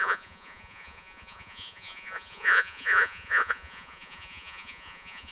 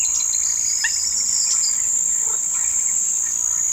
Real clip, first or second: second